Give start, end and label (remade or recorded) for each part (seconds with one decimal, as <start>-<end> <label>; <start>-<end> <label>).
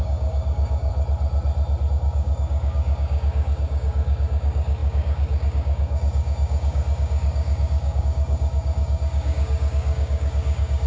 0.0-0.9 remade; 0.9-1.9 recorded; 1.9-10.9 remade